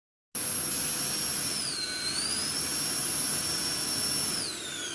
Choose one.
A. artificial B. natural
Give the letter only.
B